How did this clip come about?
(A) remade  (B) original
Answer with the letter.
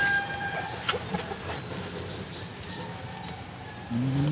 B